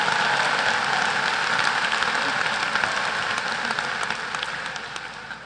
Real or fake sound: real